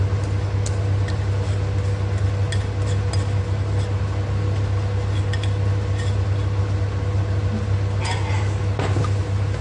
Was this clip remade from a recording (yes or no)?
no